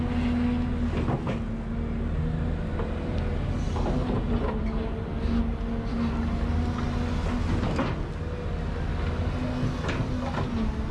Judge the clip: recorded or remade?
recorded